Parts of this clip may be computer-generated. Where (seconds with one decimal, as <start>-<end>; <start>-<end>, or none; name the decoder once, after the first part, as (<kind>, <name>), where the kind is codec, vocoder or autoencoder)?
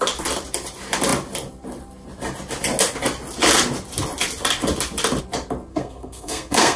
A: 5.7-6.8 (codec, SNAC)